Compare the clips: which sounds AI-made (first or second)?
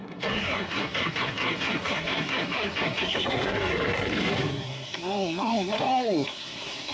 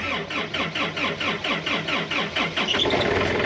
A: first